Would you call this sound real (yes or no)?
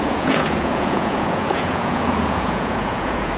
no